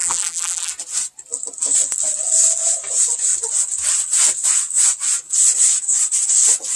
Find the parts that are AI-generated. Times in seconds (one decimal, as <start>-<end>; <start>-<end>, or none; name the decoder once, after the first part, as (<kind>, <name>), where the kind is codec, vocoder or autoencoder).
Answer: 0.0-0.7 (vocoder, BigVGAN v2)